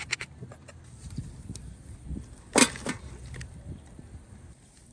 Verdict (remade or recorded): recorded